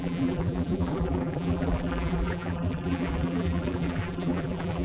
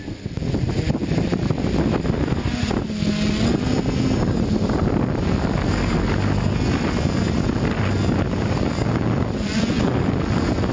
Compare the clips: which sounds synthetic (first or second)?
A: first